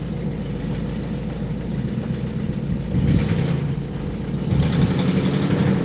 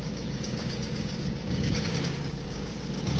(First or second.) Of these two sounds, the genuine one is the first